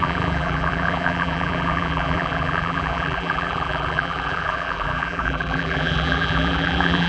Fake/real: fake